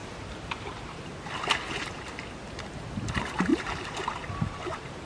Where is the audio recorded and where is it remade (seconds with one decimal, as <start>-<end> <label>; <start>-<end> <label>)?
0.0-2.0 remade; 2.0-3.5 recorded; 3.5-5.1 remade